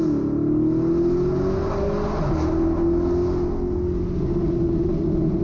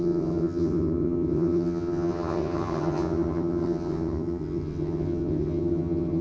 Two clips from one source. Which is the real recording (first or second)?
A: first